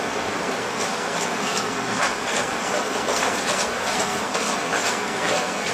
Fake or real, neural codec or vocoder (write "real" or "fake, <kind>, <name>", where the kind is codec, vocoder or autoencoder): fake, codec, SNAC